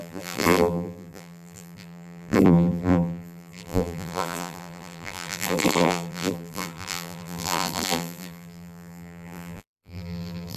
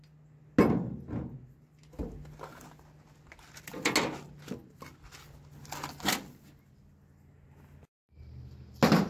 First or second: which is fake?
first